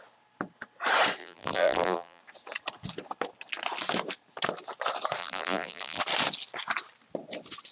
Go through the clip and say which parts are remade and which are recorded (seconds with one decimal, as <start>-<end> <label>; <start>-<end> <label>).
0.0-1.2 recorded; 1.2-2.2 remade; 2.2-5.2 recorded; 5.2-6.0 remade; 6.0-7.7 recorded